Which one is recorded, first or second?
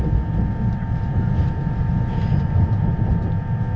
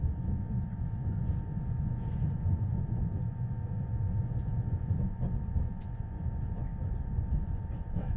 first